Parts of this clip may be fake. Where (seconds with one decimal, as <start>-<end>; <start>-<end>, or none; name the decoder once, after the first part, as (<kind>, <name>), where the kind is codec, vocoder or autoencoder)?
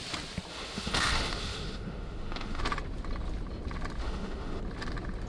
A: 0.5-2.6 (autoencoder, DAC-VAE); 4.0-4.6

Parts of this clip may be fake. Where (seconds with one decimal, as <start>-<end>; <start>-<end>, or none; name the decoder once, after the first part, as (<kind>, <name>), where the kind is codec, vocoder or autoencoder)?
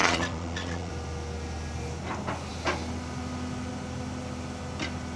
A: 0.0-0.9 (vocoder, Vocos)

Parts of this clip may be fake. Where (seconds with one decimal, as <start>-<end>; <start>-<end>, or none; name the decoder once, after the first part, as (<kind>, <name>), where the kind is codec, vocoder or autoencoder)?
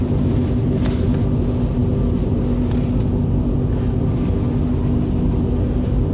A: none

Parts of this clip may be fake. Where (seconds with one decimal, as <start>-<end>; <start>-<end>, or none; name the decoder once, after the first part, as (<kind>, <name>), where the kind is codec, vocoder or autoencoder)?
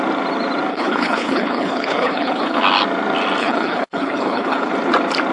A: 0.7-2.6 (codec, HILCodec); 3.4-4.7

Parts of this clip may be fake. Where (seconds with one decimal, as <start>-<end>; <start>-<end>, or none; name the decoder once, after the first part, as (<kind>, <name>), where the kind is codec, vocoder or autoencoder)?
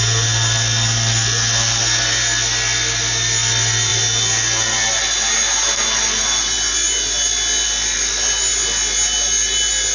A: none